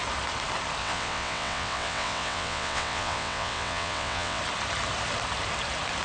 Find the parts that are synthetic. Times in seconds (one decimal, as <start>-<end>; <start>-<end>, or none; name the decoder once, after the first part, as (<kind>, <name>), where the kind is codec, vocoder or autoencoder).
0.8-4.4 (vocoder, WaveNeXt)